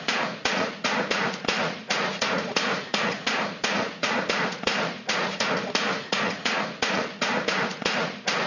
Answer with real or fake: fake